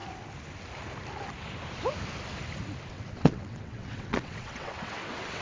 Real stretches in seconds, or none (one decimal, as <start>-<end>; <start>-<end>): 0.0-2.9